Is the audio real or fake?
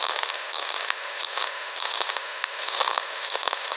fake